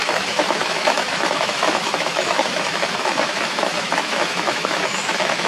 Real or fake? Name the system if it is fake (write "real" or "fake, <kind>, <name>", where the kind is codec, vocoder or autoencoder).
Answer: fake, autoencoder, DAC-VAE